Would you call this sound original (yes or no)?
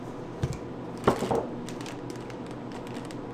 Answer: yes